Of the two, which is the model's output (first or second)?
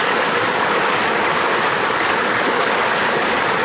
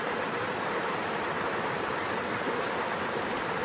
first